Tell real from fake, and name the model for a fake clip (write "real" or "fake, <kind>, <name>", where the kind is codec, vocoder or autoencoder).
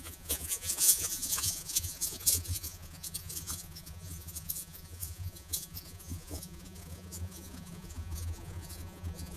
fake, vocoder, Vocos